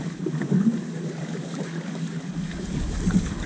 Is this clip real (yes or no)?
no